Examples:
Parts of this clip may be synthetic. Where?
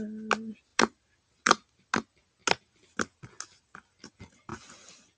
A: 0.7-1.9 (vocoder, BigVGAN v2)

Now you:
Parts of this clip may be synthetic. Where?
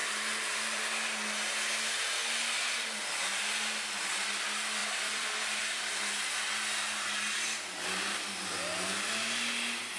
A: 0.0-0.9 (vocoder, BigVGAN v2); 4.8-5.6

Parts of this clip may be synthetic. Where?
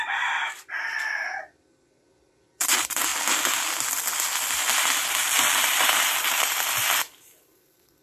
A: 0.0-3.1 (vocoder, BigVGAN v2); 5.6-8.0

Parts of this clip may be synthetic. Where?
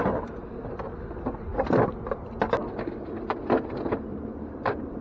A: 4.1-5.0 (vocoder, BigVGAN v2)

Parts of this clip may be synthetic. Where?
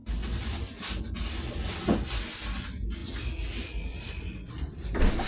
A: none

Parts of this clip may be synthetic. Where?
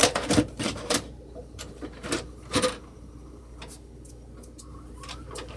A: 0.0-3.4 (vocoder, BigVGAN v2); 4.7-5.6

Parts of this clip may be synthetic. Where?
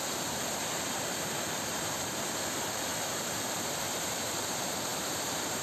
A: 0.0-5.6 (vocoder, BigVGAN v2)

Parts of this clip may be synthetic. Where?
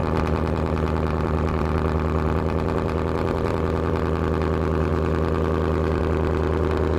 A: 0.0-4.2 (vocoder, BigVGAN v2)